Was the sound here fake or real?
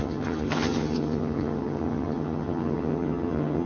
fake